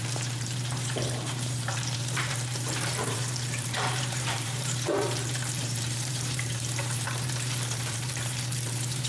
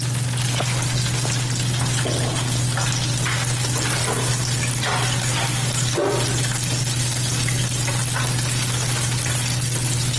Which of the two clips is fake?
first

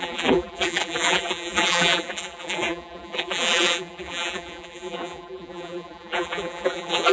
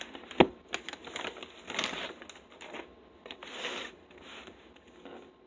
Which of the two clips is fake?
first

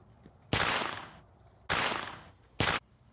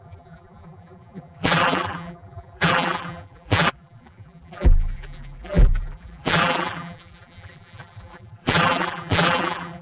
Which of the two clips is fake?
second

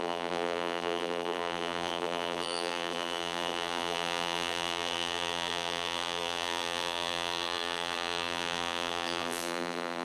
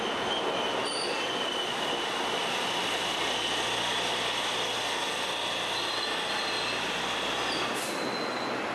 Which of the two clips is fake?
first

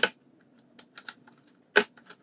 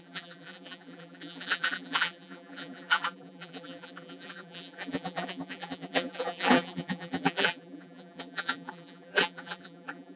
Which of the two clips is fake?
second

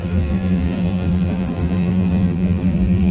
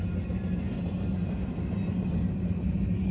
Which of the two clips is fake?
first